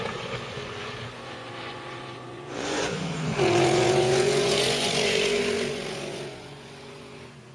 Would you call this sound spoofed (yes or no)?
yes